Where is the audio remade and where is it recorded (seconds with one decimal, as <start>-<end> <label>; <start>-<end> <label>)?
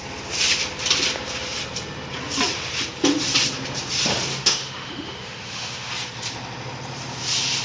0.0-4.3 recorded; 4.3-5.9 remade; 5.9-7.6 recorded